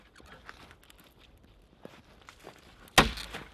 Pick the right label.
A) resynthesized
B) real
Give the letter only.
B